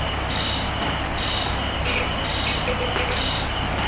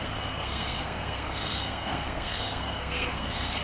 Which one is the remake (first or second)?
second